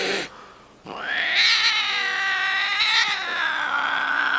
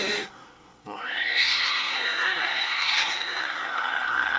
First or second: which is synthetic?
second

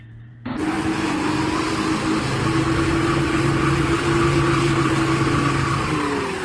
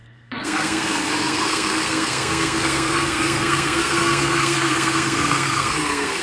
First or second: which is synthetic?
second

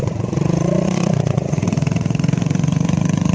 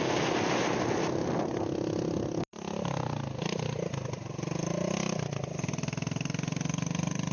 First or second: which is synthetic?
first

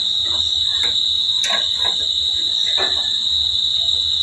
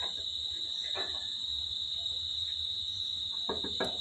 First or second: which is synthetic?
second